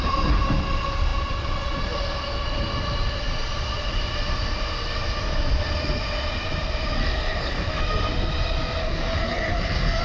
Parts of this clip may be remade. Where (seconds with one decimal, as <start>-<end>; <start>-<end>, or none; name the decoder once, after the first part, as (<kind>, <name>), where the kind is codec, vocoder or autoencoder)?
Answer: 7.0-7.8 (codec, SNAC); 8.8-10.0